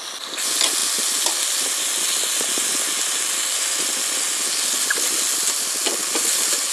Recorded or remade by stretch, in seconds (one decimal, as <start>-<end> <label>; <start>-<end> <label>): 0.0-6.7 recorded